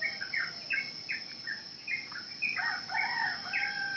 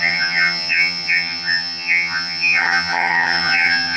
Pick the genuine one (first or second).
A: first